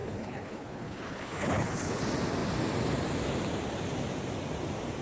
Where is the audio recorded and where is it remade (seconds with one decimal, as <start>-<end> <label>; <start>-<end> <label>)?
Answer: 0.0-2.0 remade; 2.0-5.0 recorded